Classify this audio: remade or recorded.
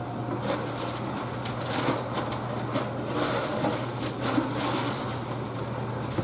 recorded